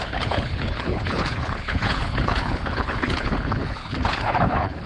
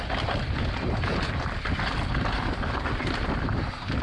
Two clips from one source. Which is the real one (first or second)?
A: second